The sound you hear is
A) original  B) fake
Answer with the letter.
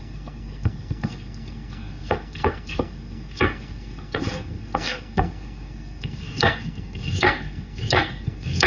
B